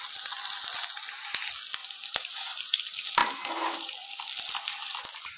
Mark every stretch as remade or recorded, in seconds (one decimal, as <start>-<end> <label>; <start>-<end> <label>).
0.0-1.8 recorded; 1.8-2.8 remade; 2.8-3.2 recorded; 3.2-4.2 remade; 4.2-5.4 recorded